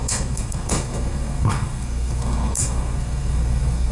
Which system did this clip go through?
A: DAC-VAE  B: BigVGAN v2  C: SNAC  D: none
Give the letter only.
C